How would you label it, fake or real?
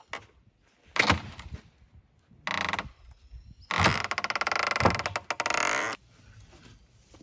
real